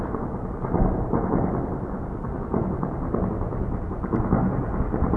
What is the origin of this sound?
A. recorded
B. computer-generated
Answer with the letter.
A